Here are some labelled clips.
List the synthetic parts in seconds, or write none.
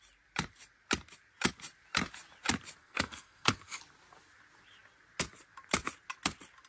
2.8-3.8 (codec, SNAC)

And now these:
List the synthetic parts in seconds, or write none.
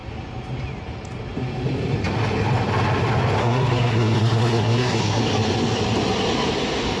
3.4-5.2 (codec, SNAC)